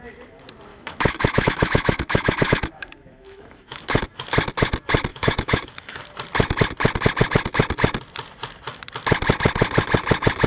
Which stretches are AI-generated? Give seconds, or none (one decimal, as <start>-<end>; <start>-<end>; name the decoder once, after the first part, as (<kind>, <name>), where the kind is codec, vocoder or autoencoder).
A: 0.7-4.0 (autoencoder, DAC-VAE); 5.1-6.0